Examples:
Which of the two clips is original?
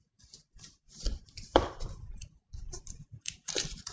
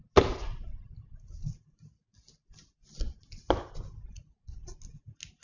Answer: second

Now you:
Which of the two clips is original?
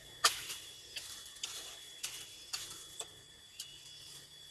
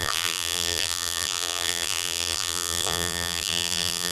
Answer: first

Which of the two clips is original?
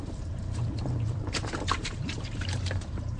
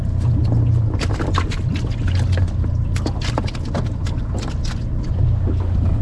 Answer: second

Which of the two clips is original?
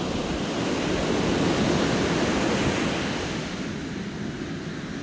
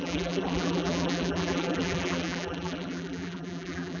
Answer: first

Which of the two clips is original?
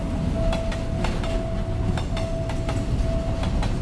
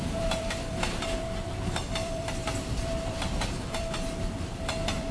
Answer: first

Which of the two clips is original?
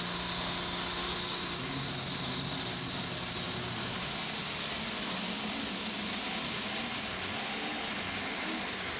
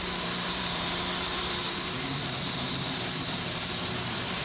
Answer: first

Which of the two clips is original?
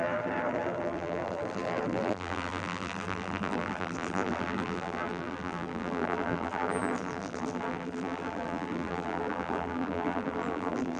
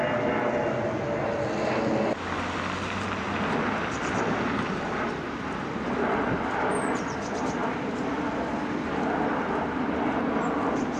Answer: second